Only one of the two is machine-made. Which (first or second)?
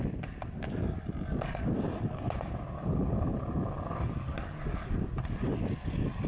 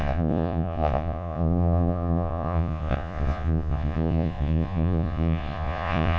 second